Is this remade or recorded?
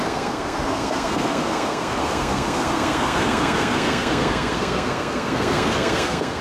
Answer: remade